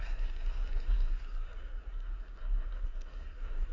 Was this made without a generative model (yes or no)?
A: no